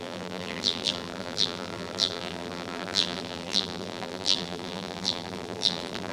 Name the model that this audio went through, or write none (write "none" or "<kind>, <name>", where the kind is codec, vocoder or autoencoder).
vocoder, BigVGAN v2